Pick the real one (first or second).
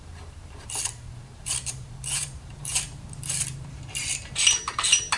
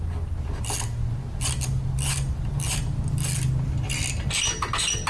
second